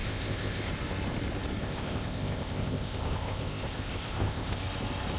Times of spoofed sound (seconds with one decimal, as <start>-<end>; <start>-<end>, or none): 0.0-0.7; 1.6-4.6